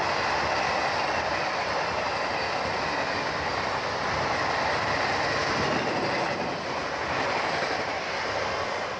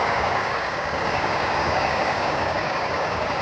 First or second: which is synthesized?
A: second